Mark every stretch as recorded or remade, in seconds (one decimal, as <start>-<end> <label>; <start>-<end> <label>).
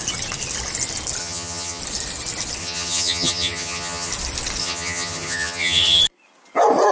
0.0-1.2 recorded; 1.2-1.8 remade; 1.8-2.6 recorded; 2.6-4.1 remade; 4.1-4.6 recorded; 4.6-6.0 remade; 6.0-6.9 recorded